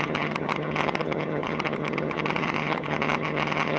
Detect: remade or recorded remade